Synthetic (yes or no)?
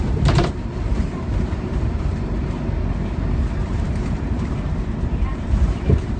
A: yes